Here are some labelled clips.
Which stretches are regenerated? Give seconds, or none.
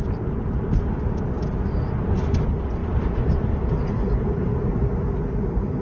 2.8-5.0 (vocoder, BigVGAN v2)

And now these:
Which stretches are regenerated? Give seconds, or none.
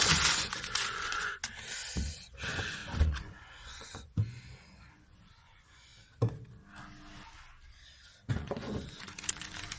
0.0-1.4 (vocoder, Vocos); 2.0-5.9; 8.3-9.8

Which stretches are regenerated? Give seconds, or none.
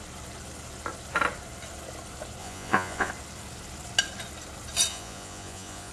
2.4-3.1 (vocoder, Vocos); 4.9-5.9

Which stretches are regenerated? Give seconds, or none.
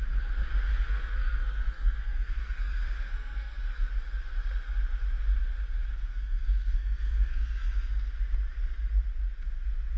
0.7-3.9 (codec, SNAC); 5.9-8.1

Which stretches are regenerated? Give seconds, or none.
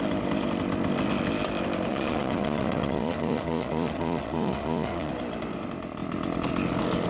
1.9-5.1 (vocoder, Vocos)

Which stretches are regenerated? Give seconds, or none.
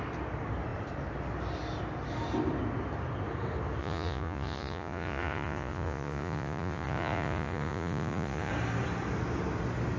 3.8-8.5 (vocoder, Vocos)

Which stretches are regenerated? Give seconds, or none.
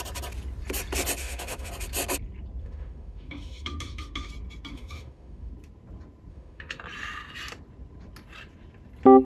1.2-1.7 (autoencoder, DAC-VAE); 2.6-4.3; 4.7-5.5; 6.3-6.8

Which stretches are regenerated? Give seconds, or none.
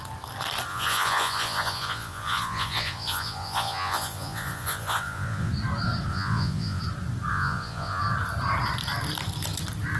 0.7-5.5 (vocoder, Vocos); 6.1-6.8; 7.3-8.0